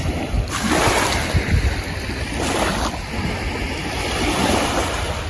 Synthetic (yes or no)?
no